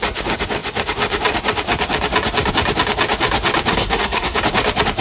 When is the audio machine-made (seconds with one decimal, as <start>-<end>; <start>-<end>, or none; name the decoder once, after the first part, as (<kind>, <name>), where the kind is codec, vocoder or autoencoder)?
3.7-4.4 (codec, SNAC)